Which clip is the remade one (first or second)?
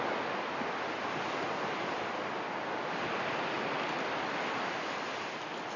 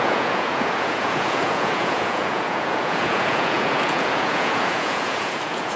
second